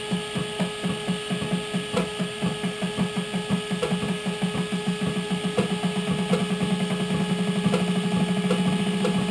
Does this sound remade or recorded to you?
recorded